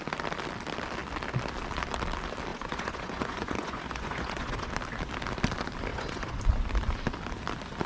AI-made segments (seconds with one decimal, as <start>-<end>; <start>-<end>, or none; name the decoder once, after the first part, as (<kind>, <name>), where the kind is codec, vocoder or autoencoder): 2.5-4.7 (vocoder, Vocos); 5.9-6.4